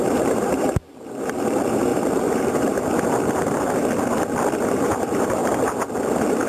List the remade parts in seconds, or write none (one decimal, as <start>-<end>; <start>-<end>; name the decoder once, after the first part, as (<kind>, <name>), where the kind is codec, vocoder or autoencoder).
0.0-3.8 (vocoder, BigVGAN v2); 4.7-5.4